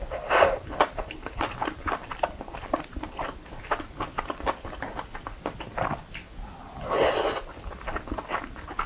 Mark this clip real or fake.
real